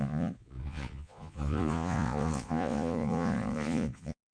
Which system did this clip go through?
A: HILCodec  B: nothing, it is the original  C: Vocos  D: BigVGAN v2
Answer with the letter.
C